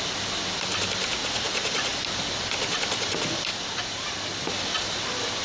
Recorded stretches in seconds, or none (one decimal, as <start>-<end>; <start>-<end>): 0.0-1.2; 2.0-5.4